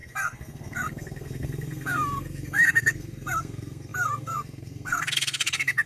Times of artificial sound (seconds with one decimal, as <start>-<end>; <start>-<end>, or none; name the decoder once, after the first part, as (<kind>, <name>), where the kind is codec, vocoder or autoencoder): 0.0-5.9 (codec, SNAC)